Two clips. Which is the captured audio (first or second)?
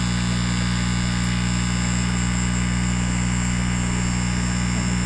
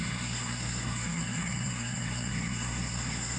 first